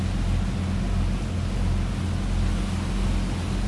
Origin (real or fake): real